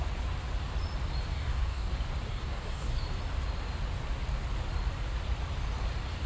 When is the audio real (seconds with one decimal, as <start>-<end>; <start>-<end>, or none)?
0.0-1.3; 1.9-2.3; 3.0-6.3